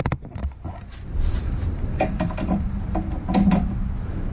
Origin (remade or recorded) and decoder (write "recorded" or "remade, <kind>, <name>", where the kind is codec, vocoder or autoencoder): recorded